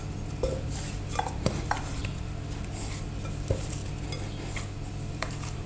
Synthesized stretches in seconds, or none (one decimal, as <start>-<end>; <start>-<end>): 0.0-2.0; 3.3-3.8; 5.1-5.7